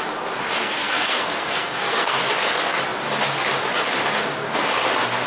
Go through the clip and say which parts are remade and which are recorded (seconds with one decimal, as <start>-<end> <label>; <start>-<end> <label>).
0.0-0.6 recorded; 0.6-2.3 remade; 2.3-5.3 recorded